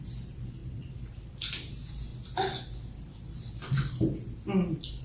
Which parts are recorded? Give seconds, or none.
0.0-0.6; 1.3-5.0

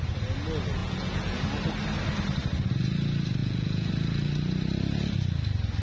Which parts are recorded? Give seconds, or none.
0.0-0.8; 1.4-3.4; 3.9-5.8

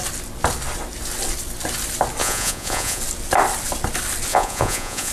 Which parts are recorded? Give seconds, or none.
0.0-2.2; 3.0-4.3